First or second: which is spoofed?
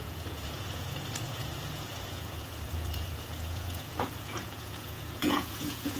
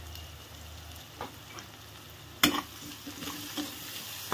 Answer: first